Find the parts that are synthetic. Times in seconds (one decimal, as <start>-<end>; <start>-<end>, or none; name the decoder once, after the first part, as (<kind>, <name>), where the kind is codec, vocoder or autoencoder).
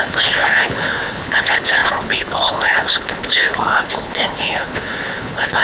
0.0-5.6 (codec, HILCodec)